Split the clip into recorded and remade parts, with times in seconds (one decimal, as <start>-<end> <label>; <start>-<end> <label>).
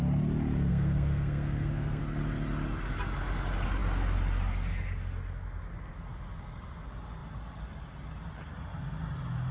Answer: 0.0-0.7 recorded; 0.7-2.0 remade; 2.0-9.5 recorded